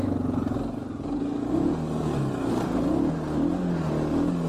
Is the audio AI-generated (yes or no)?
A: no